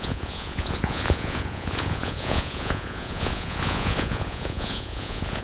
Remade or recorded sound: remade